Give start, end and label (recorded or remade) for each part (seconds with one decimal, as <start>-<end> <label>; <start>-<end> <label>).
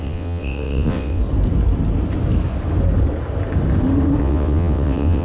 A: 0.0-1.2 remade; 1.2-4.2 recorded; 4.2-5.2 remade